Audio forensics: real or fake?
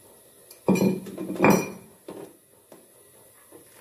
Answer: real